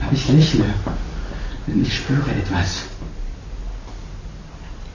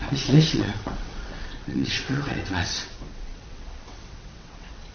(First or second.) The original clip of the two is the first